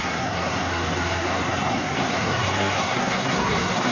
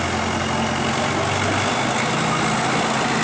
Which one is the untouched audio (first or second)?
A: second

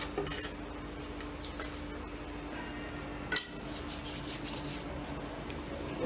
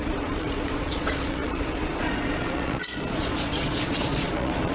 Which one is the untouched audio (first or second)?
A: first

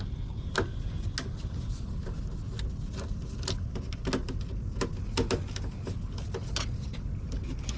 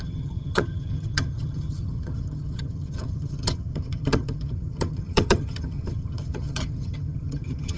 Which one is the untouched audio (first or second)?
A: first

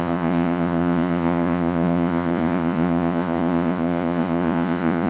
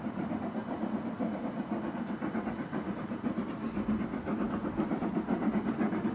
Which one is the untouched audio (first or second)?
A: second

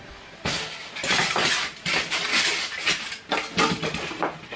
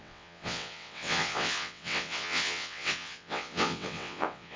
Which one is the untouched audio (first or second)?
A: first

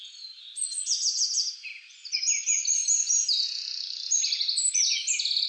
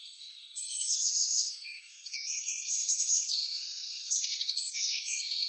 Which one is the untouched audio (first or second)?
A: first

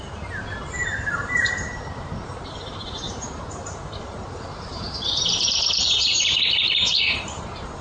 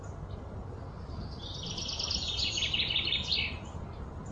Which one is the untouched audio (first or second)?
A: second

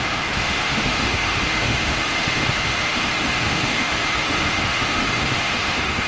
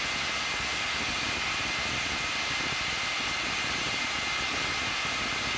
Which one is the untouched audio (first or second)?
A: second